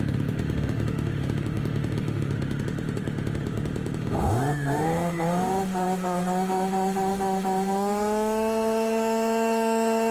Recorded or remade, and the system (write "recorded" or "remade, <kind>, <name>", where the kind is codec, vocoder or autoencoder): remade, autoencoder, DAC-VAE